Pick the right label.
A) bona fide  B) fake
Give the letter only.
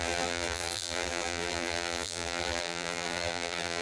B